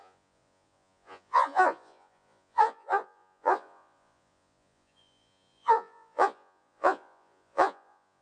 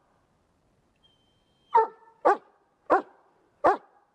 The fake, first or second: first